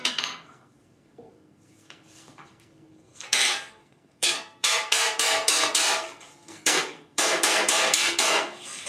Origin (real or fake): fake